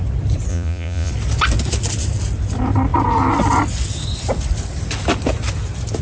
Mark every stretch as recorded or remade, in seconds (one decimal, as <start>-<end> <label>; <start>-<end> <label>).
0.0-0.5 recorded; 0.5-1.1 remade; 1.1-6.0 recorded